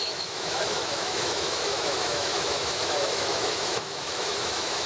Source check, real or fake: fake